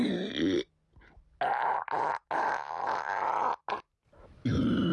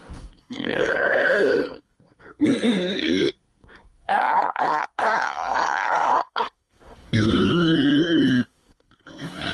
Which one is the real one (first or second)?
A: first